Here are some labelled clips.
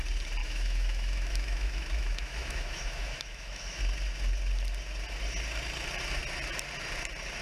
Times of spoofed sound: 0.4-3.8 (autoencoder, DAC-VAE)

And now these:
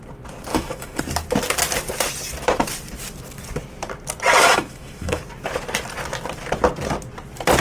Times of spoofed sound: 0.5-1.0 (autoencoder, DAC-VAE); 4.4-5.2

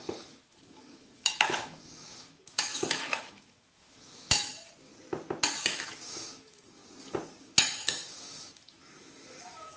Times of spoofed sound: 0.0-4.5 (autoencoder, DAC-VAE); 5.7-6.8; 7.4-9.8

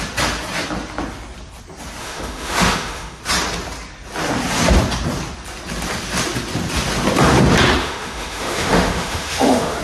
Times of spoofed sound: 2.0-3.2 (autoencoder, DAC-VAE); 7.8-9.8